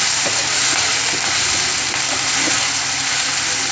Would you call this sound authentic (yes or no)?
yes